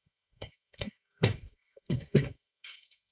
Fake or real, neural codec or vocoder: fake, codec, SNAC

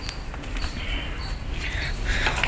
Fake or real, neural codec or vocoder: real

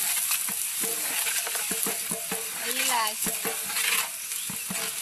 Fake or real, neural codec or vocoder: real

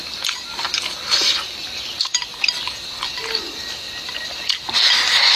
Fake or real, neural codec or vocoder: real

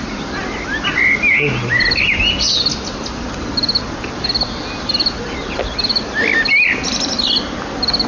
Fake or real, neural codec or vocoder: real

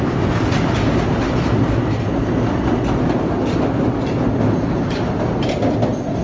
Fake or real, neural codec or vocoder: real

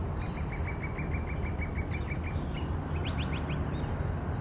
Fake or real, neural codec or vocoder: real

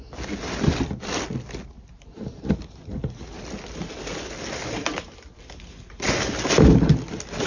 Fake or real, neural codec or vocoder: real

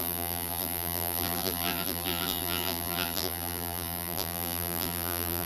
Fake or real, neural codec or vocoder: fake, vocoder, BigVGAN v2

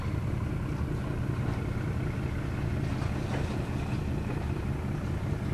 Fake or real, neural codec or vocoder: real